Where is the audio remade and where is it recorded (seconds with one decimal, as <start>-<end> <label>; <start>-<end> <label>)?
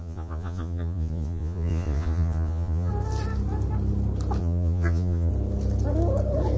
0.0-2.9 remade; 2.9-4.4 recorded; 4.4-5.3 remade; 5.3-6.6 recorded